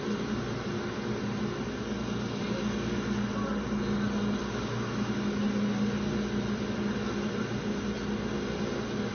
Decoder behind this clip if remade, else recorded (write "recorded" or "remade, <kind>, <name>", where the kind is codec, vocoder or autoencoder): recorded